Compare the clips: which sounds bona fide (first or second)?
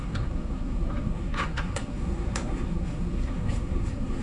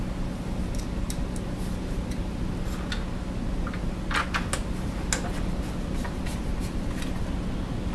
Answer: second